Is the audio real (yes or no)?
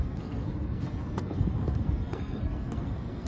no